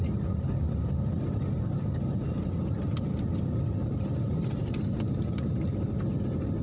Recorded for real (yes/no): yes